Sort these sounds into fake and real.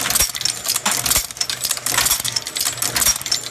real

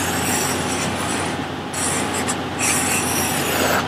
real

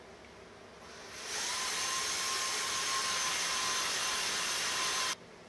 real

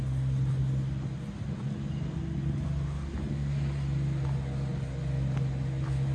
real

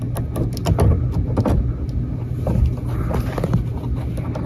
real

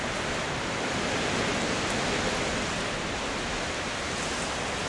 real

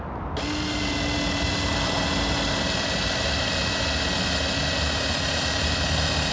real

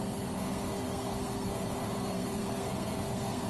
fake